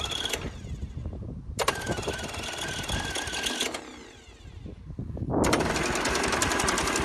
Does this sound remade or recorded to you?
recorded